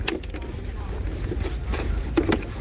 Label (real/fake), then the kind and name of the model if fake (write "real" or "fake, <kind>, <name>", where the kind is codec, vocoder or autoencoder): real